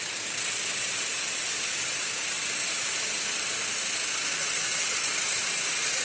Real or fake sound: real